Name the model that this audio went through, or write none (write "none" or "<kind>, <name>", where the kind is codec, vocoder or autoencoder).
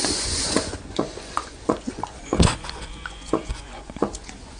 vocoder, Vocos